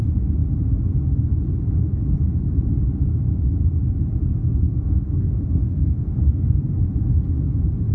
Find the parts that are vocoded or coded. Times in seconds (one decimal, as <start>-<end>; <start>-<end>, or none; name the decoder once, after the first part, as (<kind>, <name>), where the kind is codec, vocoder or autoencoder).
4.4-6.8 (codec, SNAC)